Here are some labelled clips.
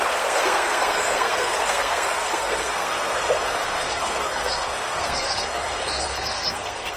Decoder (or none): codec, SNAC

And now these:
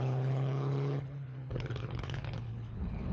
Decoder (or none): codec, HILCodec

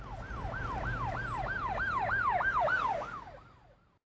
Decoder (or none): none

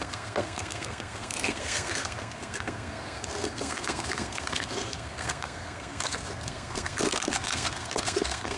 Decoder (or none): codec, SNAC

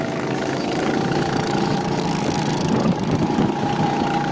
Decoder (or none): codec, DAC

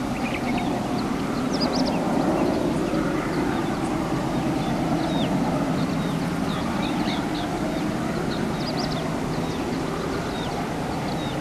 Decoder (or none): none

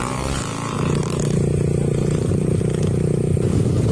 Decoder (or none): none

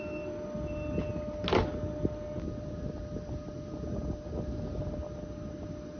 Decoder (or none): none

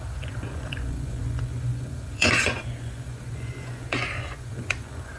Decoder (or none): vocoder, Vocos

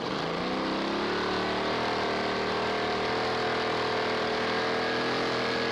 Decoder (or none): none